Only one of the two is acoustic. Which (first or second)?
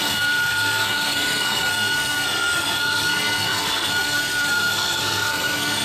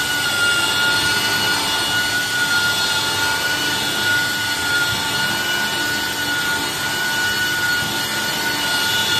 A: second